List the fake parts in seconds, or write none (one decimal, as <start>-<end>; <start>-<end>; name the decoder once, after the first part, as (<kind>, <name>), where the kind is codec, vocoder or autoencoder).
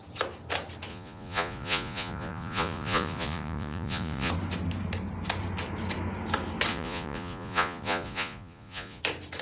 0.9-4.3 (vocoder, Vocos); 6.7-9.0